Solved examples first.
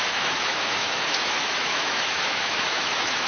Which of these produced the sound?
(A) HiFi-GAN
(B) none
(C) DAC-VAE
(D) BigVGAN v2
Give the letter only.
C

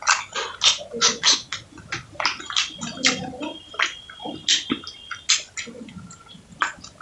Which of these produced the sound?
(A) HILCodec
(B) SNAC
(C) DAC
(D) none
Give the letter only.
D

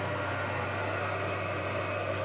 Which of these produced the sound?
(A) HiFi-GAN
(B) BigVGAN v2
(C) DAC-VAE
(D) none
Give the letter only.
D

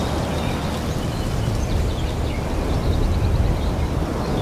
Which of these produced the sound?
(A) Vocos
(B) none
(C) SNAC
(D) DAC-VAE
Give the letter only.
B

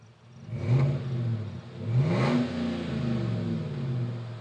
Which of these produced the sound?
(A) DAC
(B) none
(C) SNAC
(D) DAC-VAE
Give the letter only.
B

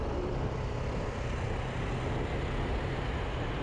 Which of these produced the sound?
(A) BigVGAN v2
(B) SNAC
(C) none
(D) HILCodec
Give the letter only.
C